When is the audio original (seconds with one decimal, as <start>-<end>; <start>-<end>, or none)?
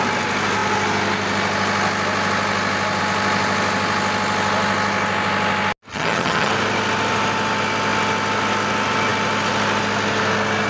0.0-5.9; 6.5-10.7